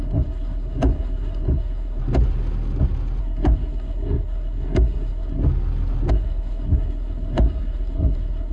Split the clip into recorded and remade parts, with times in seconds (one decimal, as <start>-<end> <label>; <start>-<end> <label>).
0.0-2.0 remade; 2.0-3.2 recorded; 3.2-5.4 remade; 5.4-6.1 recorded; 6.1-8.5 remade